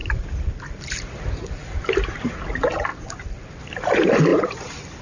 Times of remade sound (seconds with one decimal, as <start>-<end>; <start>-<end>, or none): none